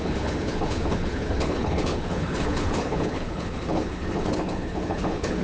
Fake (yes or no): yes